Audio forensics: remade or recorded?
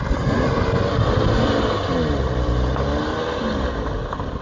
recorded